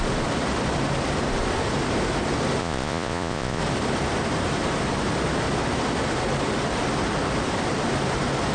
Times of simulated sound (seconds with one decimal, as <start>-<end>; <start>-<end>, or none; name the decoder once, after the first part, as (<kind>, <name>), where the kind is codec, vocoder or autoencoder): 2.6-3.6 (vocoder, Vocos)